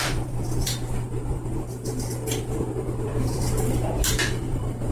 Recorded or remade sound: remade